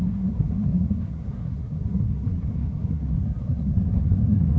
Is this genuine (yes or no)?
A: no